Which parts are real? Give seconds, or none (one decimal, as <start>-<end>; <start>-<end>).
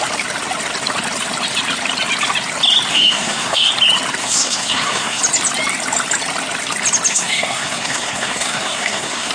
0.0-2.9; 3.7-4.2; 5.2-7.1